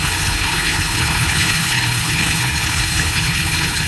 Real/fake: fake